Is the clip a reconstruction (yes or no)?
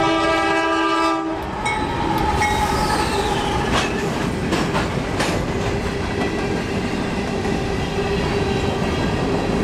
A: no